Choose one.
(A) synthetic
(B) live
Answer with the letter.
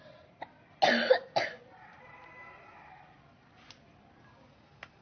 B